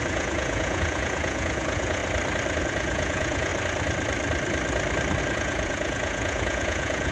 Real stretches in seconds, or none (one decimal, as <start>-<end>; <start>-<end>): 2.0-2.6; 3.5-5.2